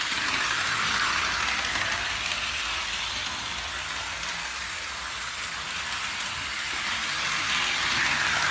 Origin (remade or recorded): recorded